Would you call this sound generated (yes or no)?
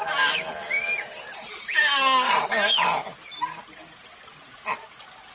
no